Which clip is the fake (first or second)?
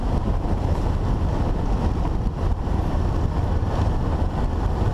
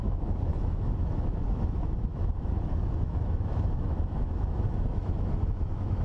second